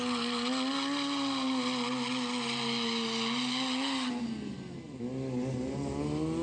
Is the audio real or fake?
real